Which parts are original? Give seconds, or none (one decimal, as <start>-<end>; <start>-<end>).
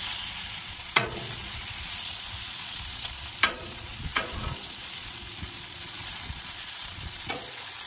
none